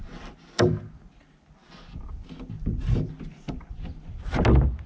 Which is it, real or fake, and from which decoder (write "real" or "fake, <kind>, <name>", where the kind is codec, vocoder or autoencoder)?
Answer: real